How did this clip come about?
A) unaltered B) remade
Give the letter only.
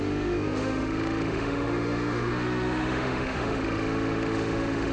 B